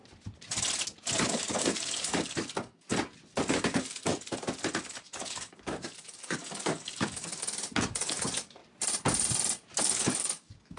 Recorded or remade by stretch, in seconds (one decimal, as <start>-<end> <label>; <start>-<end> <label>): 0.0-1.3 recorded; 1.3-2.9 remade; 2.9-3.4 recorded; 3.4-4.1 remade; 4.1-5.0 recorded; 5.0-8.6 remade; 8.6-9.8 recorded; 9.8-10.8 remade